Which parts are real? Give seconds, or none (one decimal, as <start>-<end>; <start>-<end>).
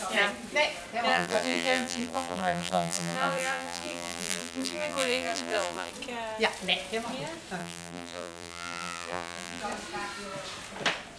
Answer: 0.0-1.1; 5.9-7.6; 9.6-11.2